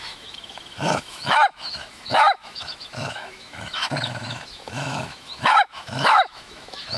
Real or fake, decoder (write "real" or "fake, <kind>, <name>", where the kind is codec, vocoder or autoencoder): fake, autoencoder, DAC-VAE